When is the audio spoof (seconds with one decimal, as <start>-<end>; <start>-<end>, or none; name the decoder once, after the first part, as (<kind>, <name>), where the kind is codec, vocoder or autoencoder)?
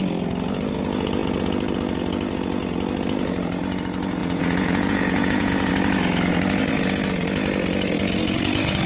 4.2-5.7 (vocoder, Vocos)